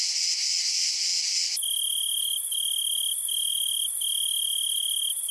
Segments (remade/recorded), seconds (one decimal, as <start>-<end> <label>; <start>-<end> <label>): 0.0-5.3 recorded